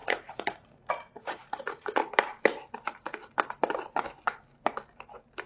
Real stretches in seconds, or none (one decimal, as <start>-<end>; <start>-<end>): 2.0-5.5